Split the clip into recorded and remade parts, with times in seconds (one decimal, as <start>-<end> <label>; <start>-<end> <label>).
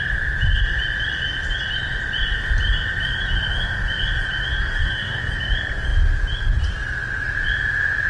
0.0-4.5 recorded; 4.5-5.2 remade; 5.2-8.1 recorded